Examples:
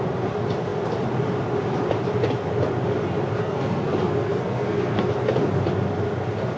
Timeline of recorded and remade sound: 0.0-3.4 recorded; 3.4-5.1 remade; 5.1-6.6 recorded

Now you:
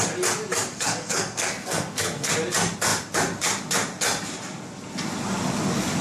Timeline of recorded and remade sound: 0.0-0.7 recorded; 0.7-2.3 remade; 2.3-6.0 recorded

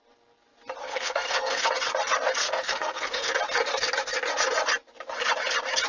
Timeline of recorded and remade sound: 0.0-0.8 recorded; 0.8-1.7 remade; 1.7-2.4 recorded; 2.4-3.3 remade; 3.3-5.9 recorded

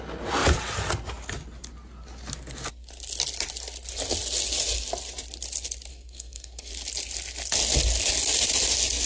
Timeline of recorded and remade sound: 0.0-5.9 recorded; 5.9-6.7 remade; 6.7-9.1 recorded

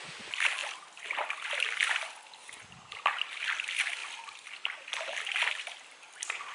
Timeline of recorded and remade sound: 0.0-6.5 recorded

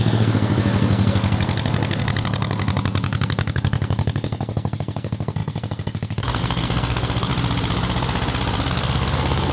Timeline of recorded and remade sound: 0.0-7.3 remade; 7.3-8.7 recorded; 8.7-9.5 remade

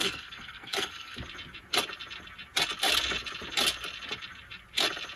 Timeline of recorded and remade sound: 0.0-1.2 remade; 1.2-5.2 recorded

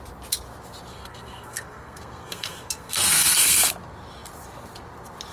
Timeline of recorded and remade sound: 0.0-0.9 recorded; 0.9-3.7 remade; 3.7-5.3 recorded